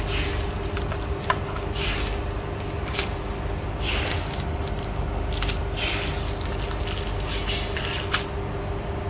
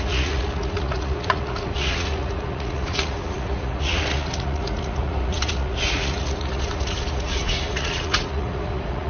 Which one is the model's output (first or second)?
second